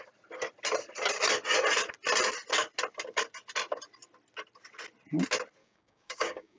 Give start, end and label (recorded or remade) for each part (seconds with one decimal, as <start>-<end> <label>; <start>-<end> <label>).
0.0-5.6 recorded; 5.6-6.6 remade

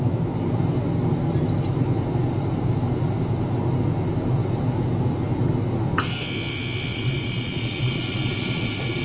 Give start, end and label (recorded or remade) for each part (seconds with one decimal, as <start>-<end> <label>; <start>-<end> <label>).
0.0-6.9 recorded; 6.9-9.0 remade

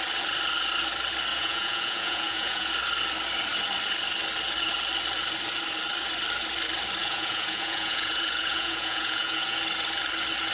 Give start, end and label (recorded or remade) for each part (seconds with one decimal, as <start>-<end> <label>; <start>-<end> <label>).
0.0-1.3 recorded; 1.3-2.7 remade; 2.7-7.0 recorded; 7.0-9.6 remade; 9.6-10.5 recorded

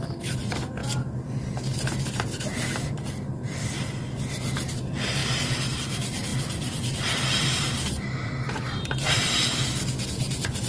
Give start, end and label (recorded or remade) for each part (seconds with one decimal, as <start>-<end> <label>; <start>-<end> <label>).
0.0-10.7 recorded

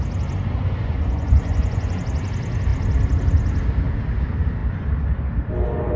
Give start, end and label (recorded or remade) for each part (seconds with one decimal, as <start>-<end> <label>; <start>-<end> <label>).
0.0-0.8 recorded; 0.8-2.0 remade; 2.0-6.0 recorded

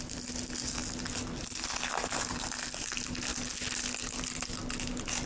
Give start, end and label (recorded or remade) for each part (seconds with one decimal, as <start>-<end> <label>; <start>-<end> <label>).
0.0-5.3 recorded

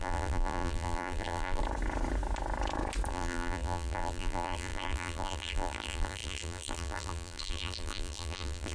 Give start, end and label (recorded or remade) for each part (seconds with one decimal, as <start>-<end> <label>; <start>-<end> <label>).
0.0-1.6 remade; 1.6-3.1 recorded; 3.1-8.7 remade